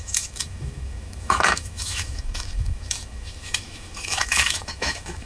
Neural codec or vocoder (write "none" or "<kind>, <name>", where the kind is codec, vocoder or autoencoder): autoencoder, DAC-VAE